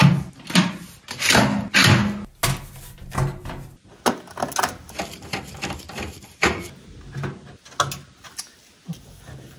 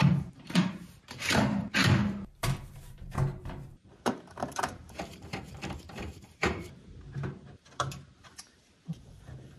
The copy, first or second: second